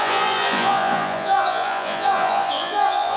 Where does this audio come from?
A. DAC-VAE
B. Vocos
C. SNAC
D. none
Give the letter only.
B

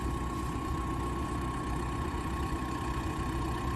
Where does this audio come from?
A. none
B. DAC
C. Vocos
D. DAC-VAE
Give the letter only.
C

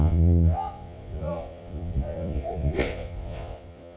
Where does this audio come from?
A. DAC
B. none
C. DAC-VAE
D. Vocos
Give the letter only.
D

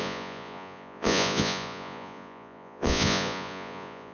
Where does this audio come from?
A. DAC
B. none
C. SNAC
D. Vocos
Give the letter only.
D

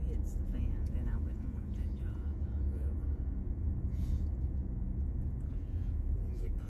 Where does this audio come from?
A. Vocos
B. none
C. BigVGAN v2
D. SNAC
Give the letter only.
A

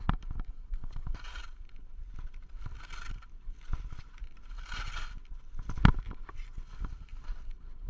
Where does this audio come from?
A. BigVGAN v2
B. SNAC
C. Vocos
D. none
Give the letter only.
D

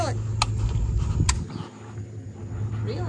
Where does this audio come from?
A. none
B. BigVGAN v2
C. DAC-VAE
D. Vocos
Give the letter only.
A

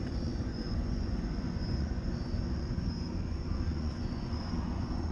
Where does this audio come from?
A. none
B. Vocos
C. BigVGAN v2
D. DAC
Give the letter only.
B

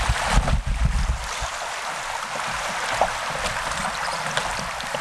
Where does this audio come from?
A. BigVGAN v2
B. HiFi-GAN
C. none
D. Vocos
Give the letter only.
C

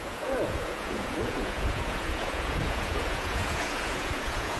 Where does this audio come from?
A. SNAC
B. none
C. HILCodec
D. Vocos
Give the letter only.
D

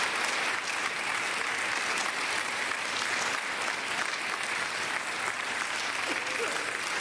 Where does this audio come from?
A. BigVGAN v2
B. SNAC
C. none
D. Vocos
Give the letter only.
C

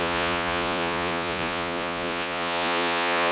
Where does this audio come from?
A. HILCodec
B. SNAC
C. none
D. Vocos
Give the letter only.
D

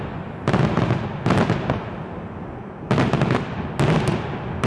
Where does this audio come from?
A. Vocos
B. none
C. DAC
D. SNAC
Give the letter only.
B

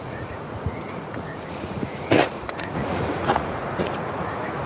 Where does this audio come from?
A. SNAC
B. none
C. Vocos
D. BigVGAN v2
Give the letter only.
C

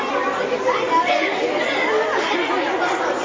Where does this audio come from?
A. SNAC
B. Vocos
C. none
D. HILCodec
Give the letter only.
C